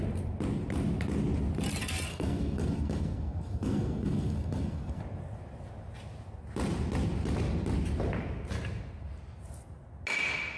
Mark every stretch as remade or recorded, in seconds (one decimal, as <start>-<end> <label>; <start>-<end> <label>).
0.0-2.1 recorded; 2.1-5.0 remade; 5.0-10.6 recorded